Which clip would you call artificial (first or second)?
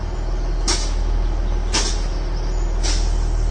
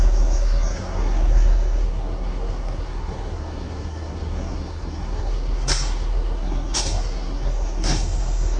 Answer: second